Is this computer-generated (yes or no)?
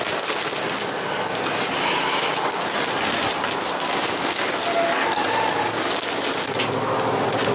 no